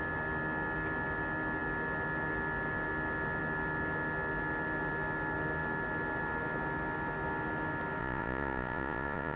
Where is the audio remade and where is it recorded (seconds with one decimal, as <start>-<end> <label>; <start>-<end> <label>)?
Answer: 0.0-8.0 recorded; 8.0-9.4 remade